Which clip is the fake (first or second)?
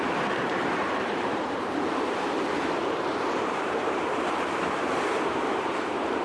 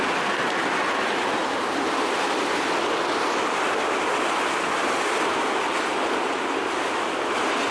first